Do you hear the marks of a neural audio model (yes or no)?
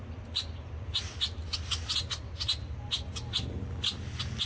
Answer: no